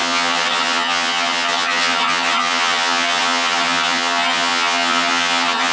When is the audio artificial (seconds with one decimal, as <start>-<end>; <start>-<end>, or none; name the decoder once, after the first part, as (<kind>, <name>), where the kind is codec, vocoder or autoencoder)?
0.0-5.7 (vocoder, HiFi-GAN)